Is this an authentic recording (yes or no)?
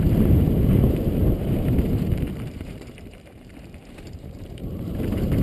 no